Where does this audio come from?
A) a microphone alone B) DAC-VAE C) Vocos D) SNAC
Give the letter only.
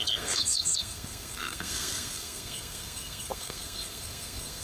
D